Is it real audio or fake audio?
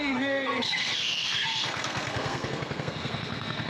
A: fake